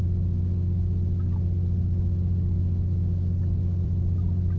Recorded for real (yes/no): no